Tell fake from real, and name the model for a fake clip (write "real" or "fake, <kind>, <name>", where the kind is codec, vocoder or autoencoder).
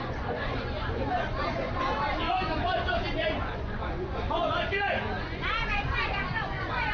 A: fake, vocoder, Vocos